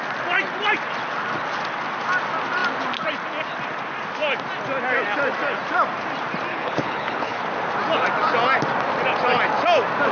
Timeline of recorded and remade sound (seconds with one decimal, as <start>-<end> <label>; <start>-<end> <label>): 0.0-6.5 recorded; 6.5-7.4 remade; 7.4-10.1 recorded

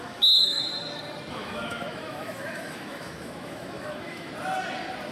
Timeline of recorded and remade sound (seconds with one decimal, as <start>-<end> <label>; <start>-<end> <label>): 0.0-0.7 remade; 0.7-1.3 recorded; 1.3-4.3 remade; 4.3-5.1 recorded

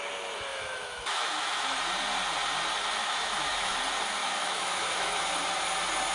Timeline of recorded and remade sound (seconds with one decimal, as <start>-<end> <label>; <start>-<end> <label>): 0.0-0.5 recorded; 0.5-1.8 remade; 1.8-3.0 recorded; 3.0-3.8 remade; 3.8-4.2 recorded; 4.2-5.2 remade; 5.2-6.1 recorded

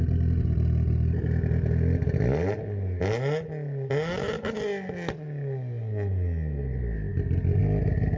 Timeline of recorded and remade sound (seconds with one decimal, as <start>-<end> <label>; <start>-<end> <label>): 0.0-8.2 recorded

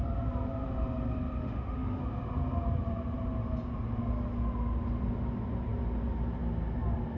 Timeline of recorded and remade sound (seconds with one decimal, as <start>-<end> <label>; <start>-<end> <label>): 0.0-1.4 recorded; 1.4-2.0 remade; 2.0-7.2 recorded

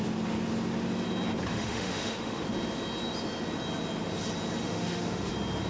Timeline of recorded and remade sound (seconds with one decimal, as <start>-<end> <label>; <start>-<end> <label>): 0.0-1.5 recorded; 1.5-2.4 remade; 2.4-4.6 recorded; 4.6-5.3 remade; 5.3-5.7 recorded

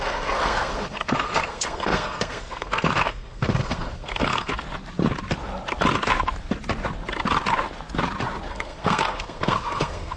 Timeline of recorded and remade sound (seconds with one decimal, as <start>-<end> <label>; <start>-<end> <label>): 0.0-4.5 remade; 4.5-8.5 recorded; 8.5-10.2 remade

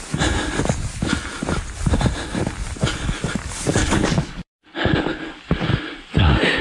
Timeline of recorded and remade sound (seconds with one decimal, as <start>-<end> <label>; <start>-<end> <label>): 0.0-2.9 recorded; 2.9-5.5 remade; 5.5-6.6 recorded